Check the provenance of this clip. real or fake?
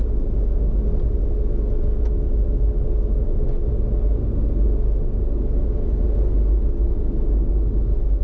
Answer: real